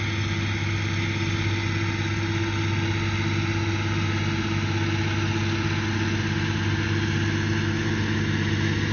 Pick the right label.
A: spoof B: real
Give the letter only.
B